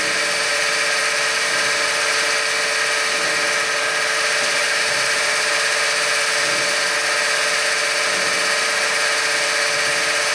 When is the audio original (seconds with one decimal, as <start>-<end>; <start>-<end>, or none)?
0.0-4.5; 5.5-10.3

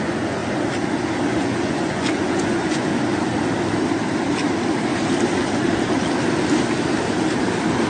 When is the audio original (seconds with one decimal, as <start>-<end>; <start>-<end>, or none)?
0.4-1.3; 2.9-7.9

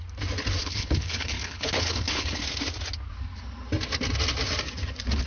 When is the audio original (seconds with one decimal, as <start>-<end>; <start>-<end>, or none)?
0.0-0.6; 2.4-5.3